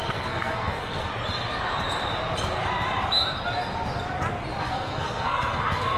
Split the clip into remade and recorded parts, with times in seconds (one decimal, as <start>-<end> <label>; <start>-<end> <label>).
0.0-1.1 remade; 1.1-4.6 recorded; 4.6-6.0 remade